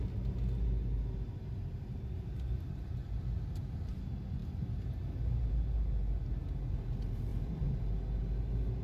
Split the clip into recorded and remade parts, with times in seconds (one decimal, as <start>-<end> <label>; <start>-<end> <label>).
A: 0.0-7.3 recorded; 7.3-7.8 remade; 7.8-8.8 recorded